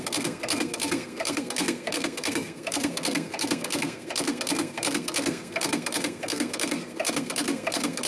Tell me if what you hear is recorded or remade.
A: remade